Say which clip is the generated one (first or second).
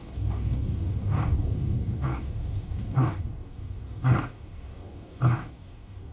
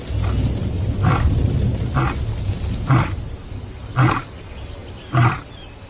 first